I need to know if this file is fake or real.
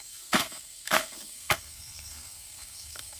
fake